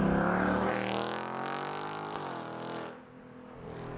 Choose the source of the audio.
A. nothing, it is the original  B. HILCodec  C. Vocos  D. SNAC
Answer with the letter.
A